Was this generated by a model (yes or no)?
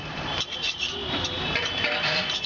no